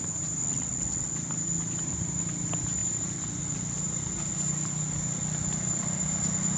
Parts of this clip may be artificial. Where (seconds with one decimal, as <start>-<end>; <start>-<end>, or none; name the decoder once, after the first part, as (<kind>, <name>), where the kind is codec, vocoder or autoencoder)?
0.4-1.1 (vocoder, WaveNeXt)